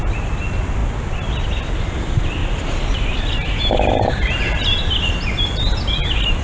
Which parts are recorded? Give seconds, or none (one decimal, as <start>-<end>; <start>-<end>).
0.0-2.4; 4.4-6.4